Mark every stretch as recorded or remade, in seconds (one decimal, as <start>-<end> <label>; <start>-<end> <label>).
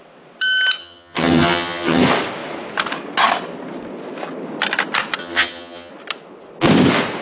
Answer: 0.0-0.8 recorded; 0.8-2.0 remade; 2.0-5.2 recorded; 5.2-5.9 remade; 5.9-7.2 recorded